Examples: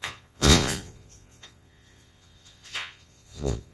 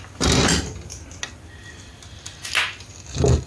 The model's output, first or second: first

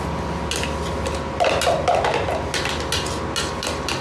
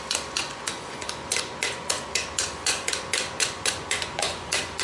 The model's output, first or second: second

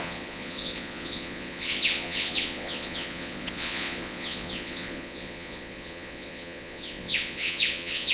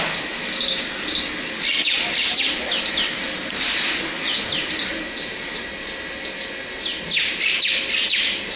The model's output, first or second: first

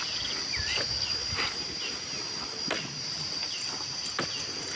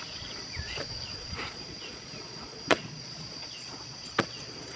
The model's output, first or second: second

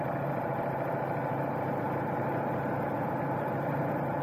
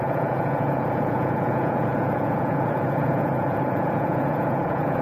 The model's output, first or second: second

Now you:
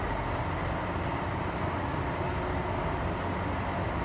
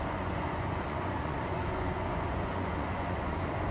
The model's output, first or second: second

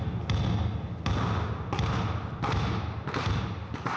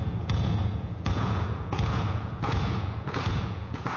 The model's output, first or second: second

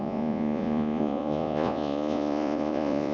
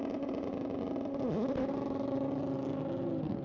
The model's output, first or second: first